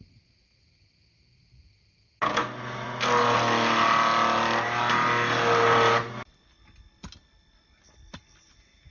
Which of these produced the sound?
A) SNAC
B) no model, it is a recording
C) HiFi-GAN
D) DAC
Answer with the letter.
B